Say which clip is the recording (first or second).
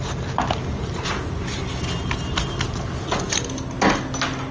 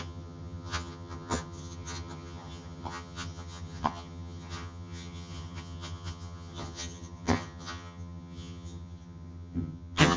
first